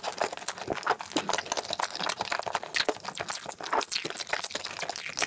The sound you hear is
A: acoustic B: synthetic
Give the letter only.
A